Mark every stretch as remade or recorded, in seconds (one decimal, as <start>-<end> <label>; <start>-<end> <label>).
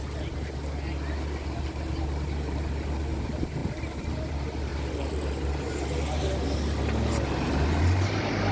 0.0-8.5 recorded